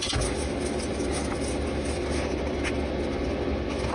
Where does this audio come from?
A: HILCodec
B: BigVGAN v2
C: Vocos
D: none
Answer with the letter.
D